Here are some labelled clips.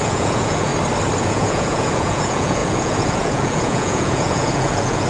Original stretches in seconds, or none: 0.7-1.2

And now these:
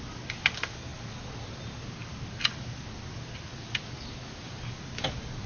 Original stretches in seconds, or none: 0.0-5.5

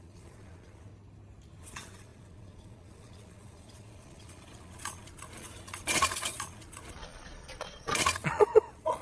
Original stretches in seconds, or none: 0.9-1.6

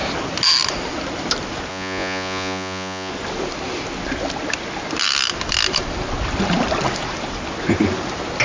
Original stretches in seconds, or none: 0.0-1.7; 3.1-8.4

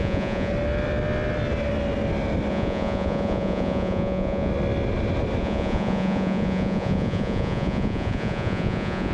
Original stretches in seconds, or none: 0.5-2.5; 4.5-5.4

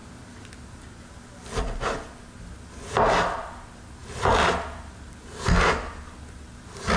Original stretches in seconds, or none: 0.0-7.0

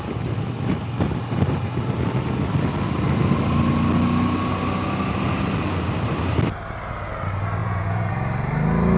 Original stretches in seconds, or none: 0.0-7.6; 8.1-9.0

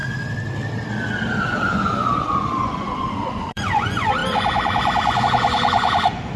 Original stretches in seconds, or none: 0.0-1.4